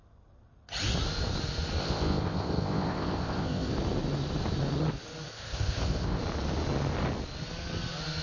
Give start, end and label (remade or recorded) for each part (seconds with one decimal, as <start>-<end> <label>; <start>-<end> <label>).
0.0-1.8 recorded; 1.8-3.7 remade; 3.7-5.3 recorded; 5.3-6.2 remade; 6.2-8.2 recorded